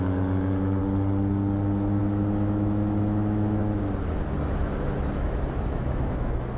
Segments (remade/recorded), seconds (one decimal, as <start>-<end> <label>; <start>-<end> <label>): 0.0-0.8 remade; 0.8-2.0 recorded; 2.0-3.6 remade; 3.6-4.3 recorded; 4.3-6.6 remade